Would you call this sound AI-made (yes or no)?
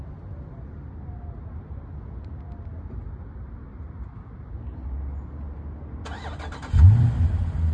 no